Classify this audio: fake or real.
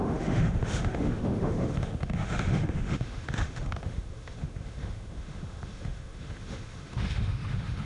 fake